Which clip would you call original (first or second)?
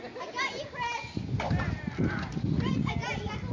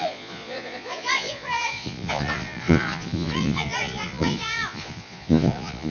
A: first